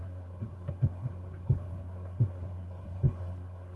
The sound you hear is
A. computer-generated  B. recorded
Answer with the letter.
A